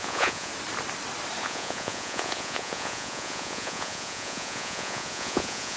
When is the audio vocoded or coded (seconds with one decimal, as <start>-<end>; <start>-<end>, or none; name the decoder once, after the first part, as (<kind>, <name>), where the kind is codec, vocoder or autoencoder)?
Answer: 0.0-0.5 (vocoder, Vocos); 1.4-5.8